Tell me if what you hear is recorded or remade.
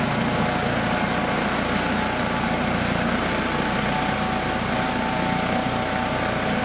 recorded